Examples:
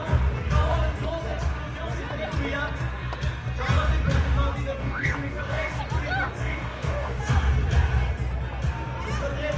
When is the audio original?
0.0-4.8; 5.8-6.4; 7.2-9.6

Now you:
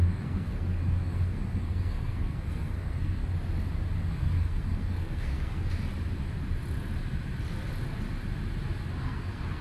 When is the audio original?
3.2-4.1; 5.7-9.0